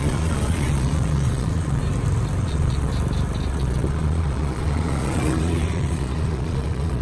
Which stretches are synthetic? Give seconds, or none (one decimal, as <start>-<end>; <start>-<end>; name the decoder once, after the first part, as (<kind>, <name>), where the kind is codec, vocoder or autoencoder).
0.0-1.8 (vocoder, Vocos); 2.4-2.9; 3.5-7.0

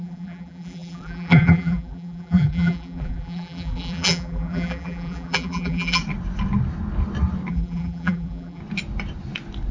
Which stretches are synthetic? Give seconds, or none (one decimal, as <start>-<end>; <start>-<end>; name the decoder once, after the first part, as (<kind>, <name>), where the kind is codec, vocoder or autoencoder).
0.0-6.0 (vocoder, BigVGAN v2); 7.5-8.6